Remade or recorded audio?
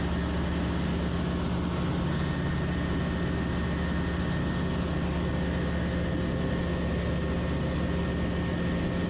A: recorded